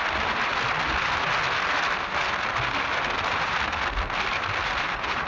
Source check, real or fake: real